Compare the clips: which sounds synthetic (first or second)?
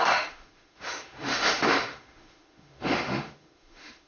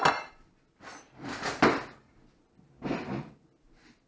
first